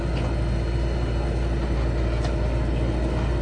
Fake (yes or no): no